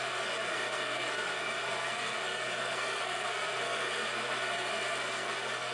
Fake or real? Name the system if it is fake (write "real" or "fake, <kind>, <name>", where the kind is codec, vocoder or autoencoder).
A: fake, codec, SNAC